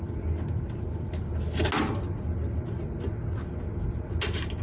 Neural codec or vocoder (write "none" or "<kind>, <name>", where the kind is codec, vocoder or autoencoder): none